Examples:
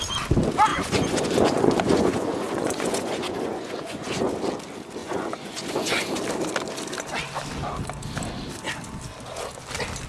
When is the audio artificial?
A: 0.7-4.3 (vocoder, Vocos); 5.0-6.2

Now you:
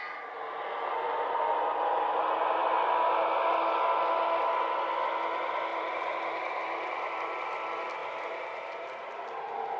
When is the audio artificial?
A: 5.7-6.6 (vocoder, BigVGAN v2); 8.0-9.3

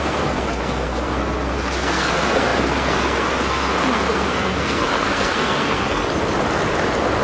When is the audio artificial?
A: 0.0-6.0 (codec, SNAC)